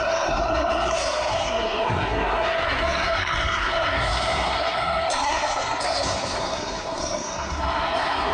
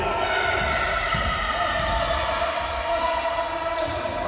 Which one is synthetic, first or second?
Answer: first